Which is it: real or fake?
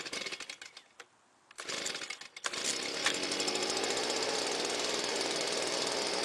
real